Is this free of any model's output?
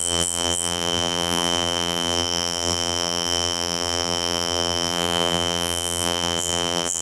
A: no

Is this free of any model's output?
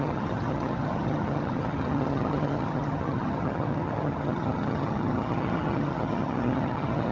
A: no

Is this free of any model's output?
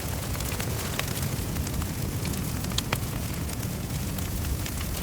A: no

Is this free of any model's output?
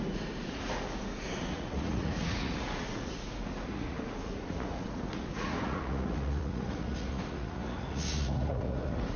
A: no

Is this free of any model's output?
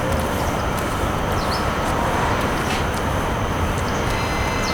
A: no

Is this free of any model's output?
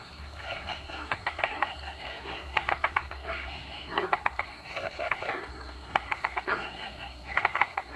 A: no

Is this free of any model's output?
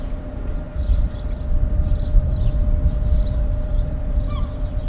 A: no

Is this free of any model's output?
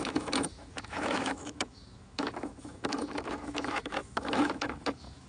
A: no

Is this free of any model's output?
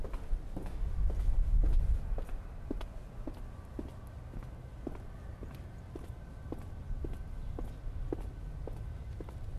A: yes